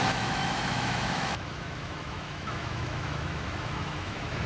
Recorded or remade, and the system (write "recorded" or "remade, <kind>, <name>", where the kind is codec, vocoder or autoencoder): remade, autoencoder, DAC-VAE